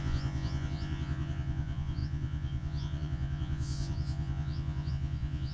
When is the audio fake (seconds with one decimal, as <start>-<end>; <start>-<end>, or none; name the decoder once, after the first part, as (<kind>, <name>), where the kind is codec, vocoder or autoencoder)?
0.0-5.5 (vocoder, Vocos)